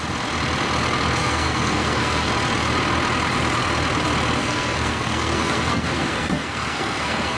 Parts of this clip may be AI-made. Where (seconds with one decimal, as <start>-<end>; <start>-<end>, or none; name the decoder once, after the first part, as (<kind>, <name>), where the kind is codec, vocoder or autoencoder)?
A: 1.2-2.3 (codec, SNAC); 4.4-7.4